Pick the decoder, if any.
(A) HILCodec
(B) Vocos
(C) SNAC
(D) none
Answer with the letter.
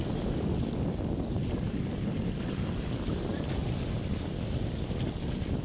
D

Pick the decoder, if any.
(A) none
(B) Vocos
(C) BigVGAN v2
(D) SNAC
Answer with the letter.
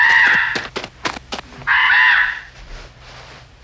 A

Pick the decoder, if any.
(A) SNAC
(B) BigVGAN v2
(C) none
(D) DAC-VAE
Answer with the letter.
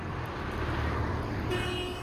C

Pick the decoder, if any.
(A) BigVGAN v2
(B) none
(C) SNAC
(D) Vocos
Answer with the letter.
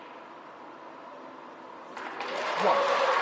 B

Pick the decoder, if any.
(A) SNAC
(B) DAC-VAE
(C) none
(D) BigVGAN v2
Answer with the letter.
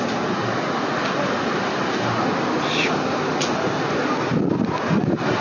C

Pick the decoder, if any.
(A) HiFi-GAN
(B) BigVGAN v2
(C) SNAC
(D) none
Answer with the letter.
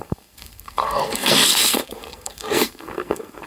C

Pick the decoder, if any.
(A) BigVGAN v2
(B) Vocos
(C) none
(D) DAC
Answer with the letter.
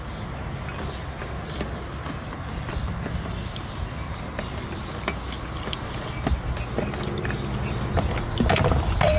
C